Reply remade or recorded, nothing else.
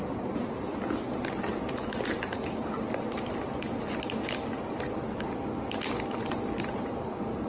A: recorded